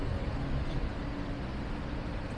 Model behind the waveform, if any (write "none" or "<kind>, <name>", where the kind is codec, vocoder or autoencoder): none